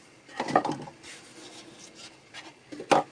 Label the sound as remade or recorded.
recorded